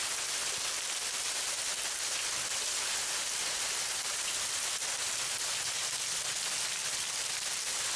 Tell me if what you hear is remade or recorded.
recorded